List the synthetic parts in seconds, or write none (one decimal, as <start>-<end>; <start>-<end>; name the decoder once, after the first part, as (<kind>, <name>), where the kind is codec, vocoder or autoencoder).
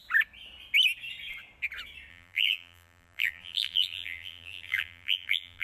2.1-5.6 (vocoder, BigVGAN v2)